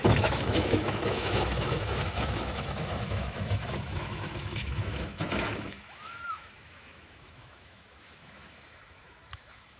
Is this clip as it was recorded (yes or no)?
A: no